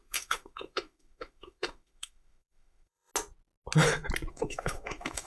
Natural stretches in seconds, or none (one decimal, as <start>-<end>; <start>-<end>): 3.1-4.3